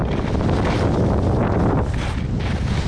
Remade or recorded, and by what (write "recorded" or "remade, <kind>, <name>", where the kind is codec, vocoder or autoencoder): recorded